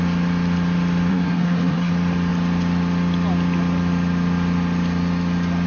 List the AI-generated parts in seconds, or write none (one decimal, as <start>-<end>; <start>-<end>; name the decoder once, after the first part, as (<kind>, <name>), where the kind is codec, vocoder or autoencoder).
1.1-1.9 (codec, SNAC)

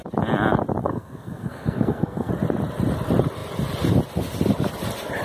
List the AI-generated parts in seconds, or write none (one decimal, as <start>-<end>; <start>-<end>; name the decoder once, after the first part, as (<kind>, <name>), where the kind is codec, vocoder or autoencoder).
0.8-2.3 (codec, SNAC)

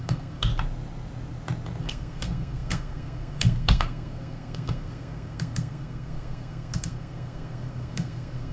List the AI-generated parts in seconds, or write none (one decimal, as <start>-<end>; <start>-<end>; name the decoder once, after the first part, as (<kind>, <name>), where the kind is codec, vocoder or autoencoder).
0.0-0.5 (codec, SNAC); 1.8-8.5